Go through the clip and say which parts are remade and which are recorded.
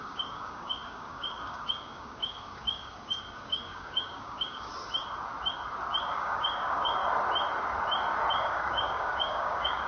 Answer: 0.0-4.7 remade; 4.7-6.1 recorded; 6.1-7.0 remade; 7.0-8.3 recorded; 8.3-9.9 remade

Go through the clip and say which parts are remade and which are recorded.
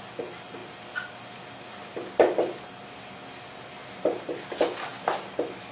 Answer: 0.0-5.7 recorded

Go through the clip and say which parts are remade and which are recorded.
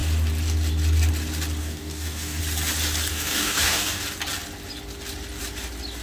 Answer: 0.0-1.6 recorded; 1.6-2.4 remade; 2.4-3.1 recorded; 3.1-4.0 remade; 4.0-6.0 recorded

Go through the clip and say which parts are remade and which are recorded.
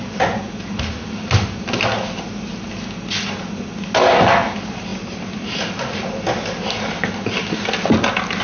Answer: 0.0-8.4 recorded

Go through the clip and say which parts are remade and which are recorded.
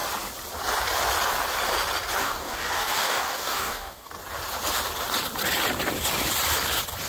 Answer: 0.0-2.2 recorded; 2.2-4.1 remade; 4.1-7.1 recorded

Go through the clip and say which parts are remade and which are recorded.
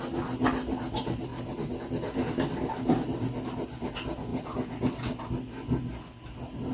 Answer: 0.0-6.7 recorded